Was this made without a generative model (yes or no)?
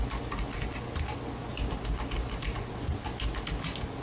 yes